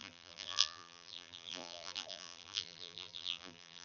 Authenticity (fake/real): fake